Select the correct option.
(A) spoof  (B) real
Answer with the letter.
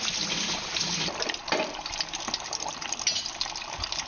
B